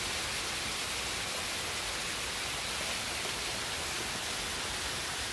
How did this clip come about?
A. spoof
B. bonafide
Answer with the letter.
B